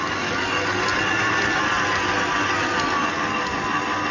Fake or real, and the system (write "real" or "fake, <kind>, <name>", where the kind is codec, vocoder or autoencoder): real